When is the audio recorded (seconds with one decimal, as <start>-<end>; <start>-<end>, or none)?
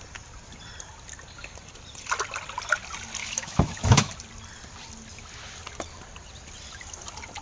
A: 0.0-3.2; 4.1-7.4